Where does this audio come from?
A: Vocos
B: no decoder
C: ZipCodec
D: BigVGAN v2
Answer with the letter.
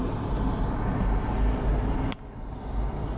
B